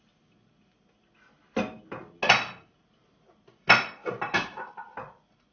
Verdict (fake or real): real